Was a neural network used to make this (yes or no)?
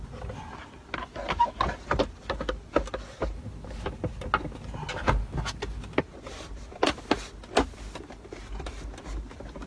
no